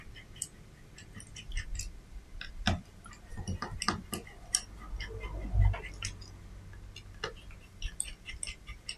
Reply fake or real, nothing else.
real